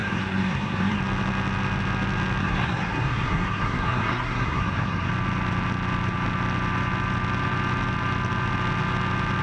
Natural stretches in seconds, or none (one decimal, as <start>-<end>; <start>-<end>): 1.0-2.4; 5.1-9.4